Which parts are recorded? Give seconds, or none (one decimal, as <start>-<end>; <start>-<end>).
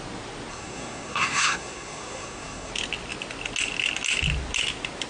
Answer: 0.0-0.5; 2.7-5.1